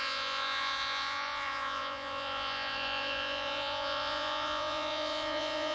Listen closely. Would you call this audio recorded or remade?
remade